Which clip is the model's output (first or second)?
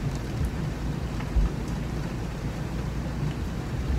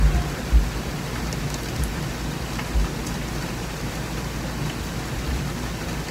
first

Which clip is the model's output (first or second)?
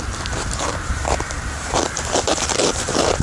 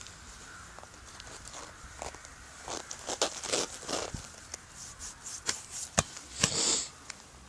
first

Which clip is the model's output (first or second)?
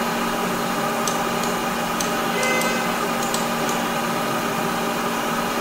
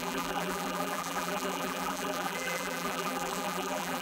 second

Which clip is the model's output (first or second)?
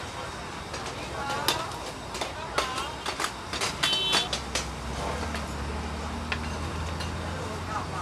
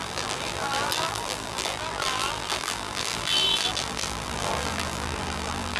second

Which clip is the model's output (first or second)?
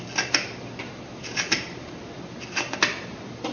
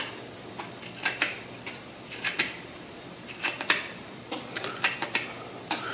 second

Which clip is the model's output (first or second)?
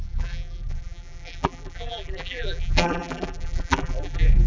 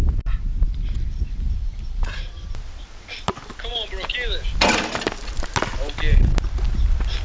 first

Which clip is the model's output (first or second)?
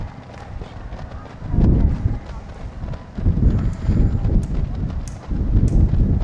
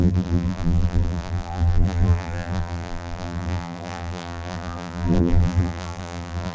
second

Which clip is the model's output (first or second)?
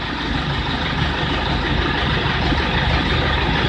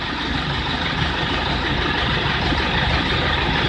second